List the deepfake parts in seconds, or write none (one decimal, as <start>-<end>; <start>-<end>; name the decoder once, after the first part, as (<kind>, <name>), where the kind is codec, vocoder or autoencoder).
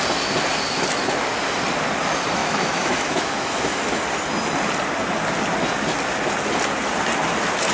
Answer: 2.4-4.0 (autoencoder, DAC-VAE)